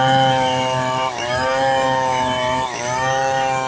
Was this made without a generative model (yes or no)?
no